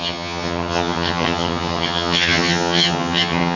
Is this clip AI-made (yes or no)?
yes